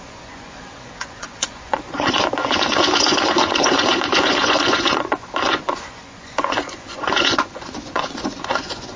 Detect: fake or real fake